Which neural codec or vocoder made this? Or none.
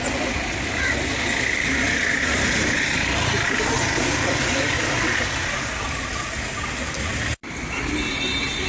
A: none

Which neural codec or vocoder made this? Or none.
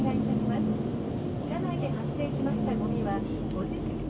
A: none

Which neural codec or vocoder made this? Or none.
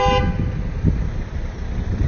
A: none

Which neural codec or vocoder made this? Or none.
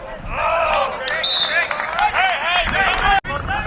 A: none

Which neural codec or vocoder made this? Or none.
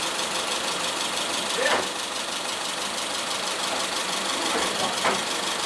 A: vocoder, BigVGAN v2